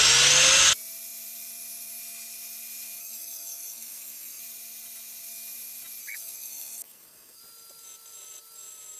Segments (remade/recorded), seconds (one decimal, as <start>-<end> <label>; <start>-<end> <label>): 0.0-3.0 recorded; 3.0-4.4 remade; 4.4-6.0 recorded; 6.0-7.4 remade; 7.4-9.0 recorded